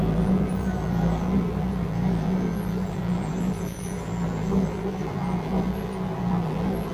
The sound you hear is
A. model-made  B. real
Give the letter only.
A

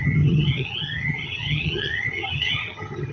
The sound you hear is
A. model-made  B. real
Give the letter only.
A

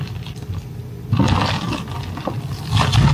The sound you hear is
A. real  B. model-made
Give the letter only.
A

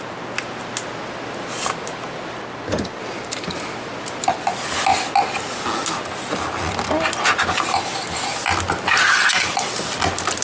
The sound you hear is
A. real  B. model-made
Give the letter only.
A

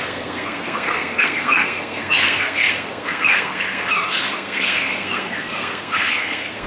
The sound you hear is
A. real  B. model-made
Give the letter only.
B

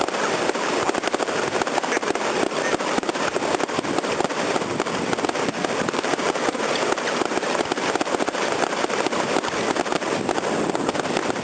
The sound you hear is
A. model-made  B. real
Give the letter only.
B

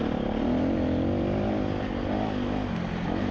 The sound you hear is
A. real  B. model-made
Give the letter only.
A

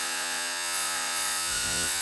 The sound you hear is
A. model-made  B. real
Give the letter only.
A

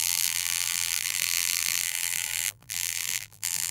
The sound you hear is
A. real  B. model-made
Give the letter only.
B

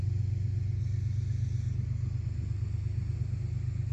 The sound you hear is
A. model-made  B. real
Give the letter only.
B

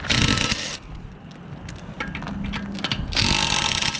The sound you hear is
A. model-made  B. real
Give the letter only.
B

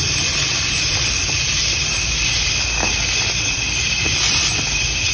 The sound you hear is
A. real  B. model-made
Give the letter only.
A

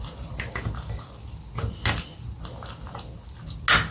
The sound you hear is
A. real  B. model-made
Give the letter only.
A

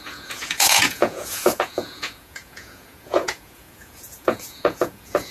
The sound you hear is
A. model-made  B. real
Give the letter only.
A